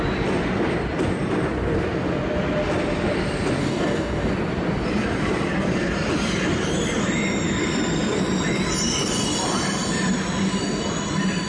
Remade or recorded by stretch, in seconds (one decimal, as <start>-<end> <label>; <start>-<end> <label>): 0.0-3.6 recorded; 3.6-4.3 remade; 4.3-11.5 recorded